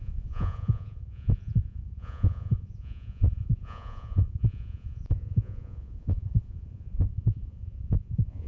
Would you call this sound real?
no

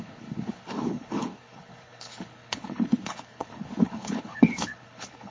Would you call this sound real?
no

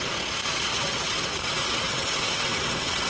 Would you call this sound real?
no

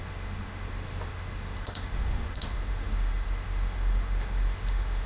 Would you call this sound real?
no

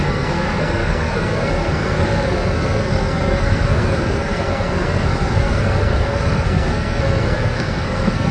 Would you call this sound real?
no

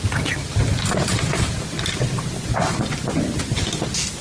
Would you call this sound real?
yes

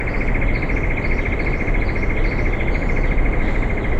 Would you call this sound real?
yes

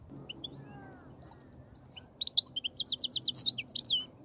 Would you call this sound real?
yes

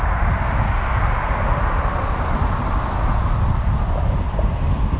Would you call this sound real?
yes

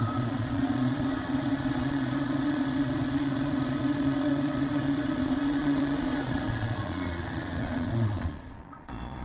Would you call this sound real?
no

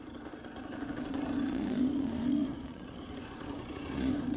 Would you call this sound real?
no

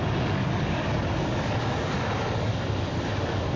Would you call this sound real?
no